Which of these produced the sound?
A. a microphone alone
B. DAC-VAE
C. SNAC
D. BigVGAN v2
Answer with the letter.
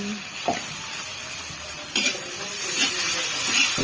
D